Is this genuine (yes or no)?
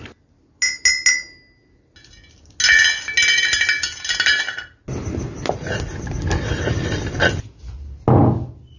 yes